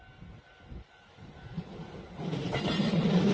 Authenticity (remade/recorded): recorded